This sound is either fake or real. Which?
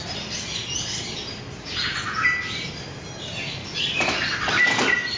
real